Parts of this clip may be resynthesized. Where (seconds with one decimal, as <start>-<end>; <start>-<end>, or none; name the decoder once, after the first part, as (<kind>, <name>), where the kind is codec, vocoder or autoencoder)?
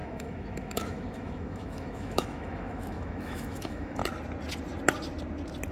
0.0-4.0 (autoencoder, DAC-VAE)